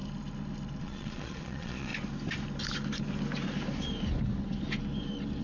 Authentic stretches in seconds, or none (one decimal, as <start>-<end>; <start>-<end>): 0.0-0.8; 1.9-5.4

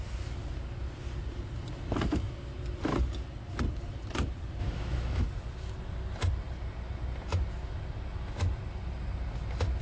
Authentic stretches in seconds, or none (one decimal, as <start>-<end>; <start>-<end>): 0.0-4.6; 5.2-9.8

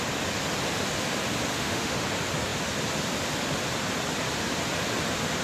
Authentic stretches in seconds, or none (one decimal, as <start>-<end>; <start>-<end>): 0.0-1.5; 2.0-5.4

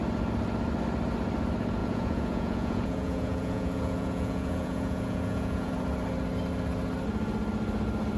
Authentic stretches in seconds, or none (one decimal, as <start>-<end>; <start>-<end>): 0.0-1.8; 5.7-8.2